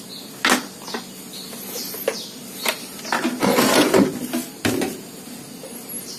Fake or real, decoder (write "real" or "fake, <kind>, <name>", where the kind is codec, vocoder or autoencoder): real